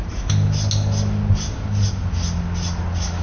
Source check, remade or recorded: recorded